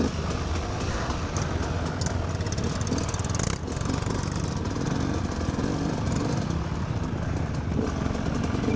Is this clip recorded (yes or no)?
yes